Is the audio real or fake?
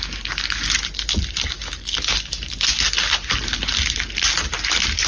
real